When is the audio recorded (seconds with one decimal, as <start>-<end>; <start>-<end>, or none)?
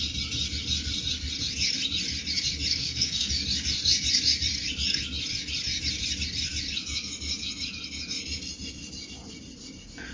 0.0-2.8; 3.3-10.1